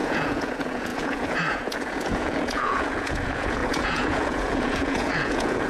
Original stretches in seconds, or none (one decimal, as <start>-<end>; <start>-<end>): none